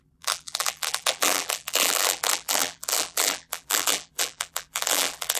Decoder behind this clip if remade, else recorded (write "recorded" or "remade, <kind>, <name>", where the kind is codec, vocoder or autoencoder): remade, vocoder, BigVGAN v2